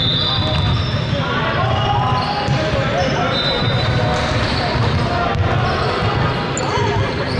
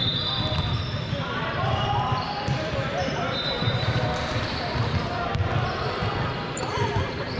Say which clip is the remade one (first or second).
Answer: second